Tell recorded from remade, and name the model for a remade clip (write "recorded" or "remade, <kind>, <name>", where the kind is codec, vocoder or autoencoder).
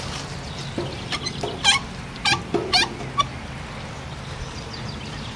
recorded